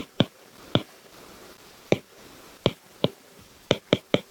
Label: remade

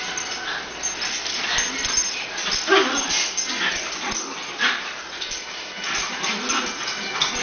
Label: recorded